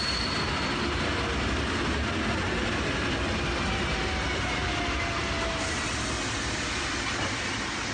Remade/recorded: recorded